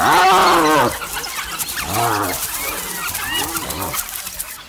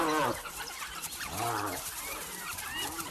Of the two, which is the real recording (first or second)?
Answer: first